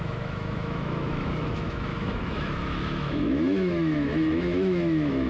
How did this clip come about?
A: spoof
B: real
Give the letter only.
A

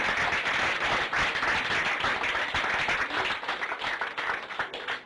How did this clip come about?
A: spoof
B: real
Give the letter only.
B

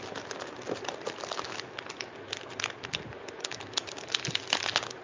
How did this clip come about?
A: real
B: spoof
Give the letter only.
A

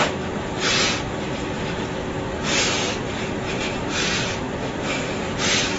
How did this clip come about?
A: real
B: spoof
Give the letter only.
A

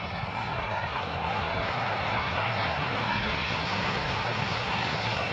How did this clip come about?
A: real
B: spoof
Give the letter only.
B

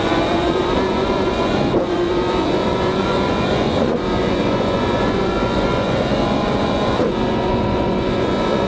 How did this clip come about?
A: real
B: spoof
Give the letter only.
B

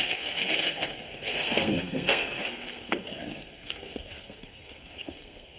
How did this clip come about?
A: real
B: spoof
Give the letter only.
B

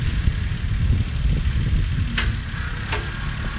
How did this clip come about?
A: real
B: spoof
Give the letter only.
A